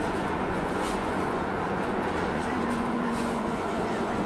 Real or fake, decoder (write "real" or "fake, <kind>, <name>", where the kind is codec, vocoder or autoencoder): fake, vocoder, Vocos